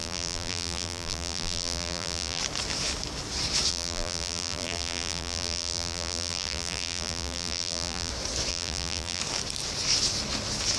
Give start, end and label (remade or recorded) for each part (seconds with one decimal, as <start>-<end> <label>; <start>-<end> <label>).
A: 0.0-2.4 remade; 2.4-3.7 recorded; 3.7-8.1 remade; 8.1-8.5 recorded; 8.5-9.2 remade; 9.2-10.8 recorded